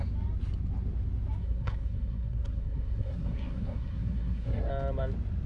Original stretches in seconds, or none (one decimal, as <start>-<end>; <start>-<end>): 0.0-1.4; 4.7-5.5